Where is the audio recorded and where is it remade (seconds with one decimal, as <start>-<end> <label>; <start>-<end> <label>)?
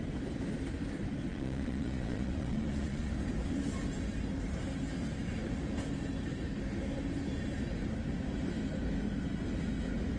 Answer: 0.0-1.3 recorded; 1.3-3.1 remade; 3.1-10.2 recorded